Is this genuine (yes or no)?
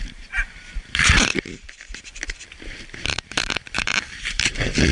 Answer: no